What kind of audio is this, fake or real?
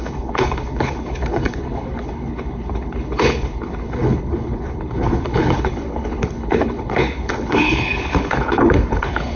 fake